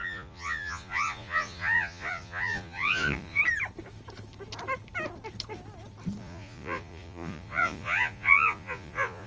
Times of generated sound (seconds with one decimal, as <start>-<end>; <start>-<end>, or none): 0.0-3.4; 6.2-9.3